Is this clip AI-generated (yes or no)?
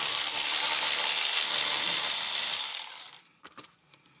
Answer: yes